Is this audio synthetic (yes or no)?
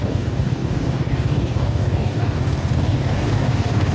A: yes